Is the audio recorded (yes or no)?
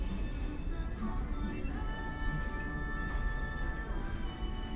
yes